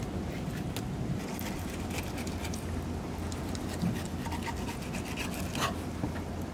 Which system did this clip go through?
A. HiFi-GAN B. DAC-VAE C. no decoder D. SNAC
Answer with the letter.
C